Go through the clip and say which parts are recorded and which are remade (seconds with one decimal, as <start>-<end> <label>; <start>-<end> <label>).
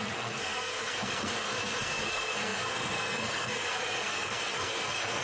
0.0-5.2 remade